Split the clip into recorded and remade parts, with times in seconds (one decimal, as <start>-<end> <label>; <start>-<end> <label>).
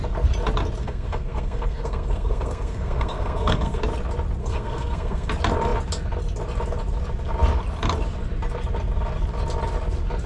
0.0-0.8 recorded; 0.8-3.8 remade; 3.8-4.4 recorded; 4.4-5.3 remade; 5.3-10.3 recorded